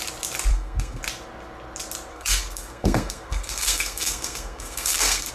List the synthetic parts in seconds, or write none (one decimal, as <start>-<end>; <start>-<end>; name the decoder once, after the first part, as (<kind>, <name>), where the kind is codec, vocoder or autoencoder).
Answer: 0.5-1.0 (codec, SNAC); 2.1-5.3